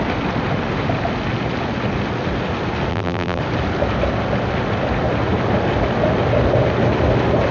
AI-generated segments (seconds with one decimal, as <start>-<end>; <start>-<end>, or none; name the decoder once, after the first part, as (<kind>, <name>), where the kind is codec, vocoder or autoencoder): 2.9-3.4 (vocoder, BigVGAN v2)